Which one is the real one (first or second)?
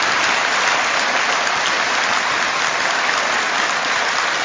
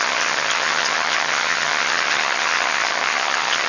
first